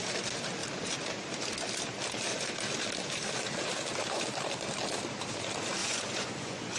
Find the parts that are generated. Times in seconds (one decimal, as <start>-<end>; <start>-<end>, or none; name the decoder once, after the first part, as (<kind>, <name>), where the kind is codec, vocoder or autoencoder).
5.8-6.8 (vocoder, Vocos)